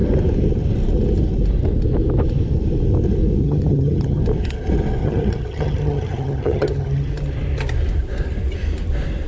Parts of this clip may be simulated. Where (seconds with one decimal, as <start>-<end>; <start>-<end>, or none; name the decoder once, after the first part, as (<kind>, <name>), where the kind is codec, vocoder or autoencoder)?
3.4-4.2 (vocoder, HiFi-GAN); 5.0-7.1